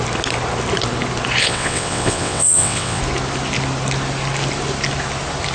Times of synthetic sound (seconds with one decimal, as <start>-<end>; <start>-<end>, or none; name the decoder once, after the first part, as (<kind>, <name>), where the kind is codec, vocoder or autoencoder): 1.4-3.0 (vocoder, WaveNeXt)